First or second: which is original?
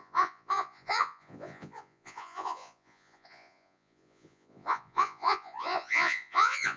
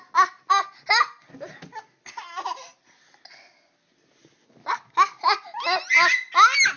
second